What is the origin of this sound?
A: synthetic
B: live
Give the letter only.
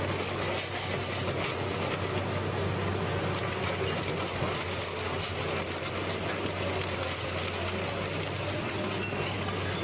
B